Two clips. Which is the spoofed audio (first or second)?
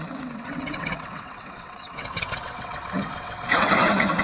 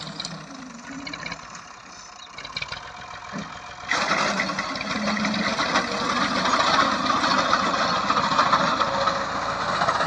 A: first